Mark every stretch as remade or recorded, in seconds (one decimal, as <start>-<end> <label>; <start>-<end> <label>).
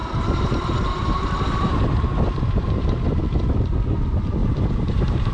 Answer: 0.0-3.2 remade; 3.2-4.4 recorded; 4.4-5.3 remade